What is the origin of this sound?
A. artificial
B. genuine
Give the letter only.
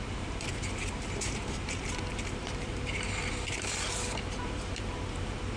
A